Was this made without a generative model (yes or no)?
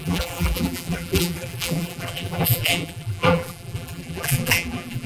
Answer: no